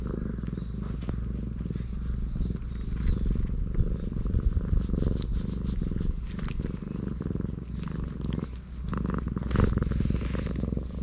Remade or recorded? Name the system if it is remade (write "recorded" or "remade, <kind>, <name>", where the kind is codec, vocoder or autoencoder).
recorded